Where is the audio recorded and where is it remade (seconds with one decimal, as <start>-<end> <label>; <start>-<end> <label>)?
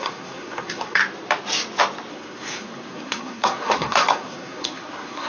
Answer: 0.0-1.0 remade; 1.0-2.1 recorded; 2.1-5.3 remade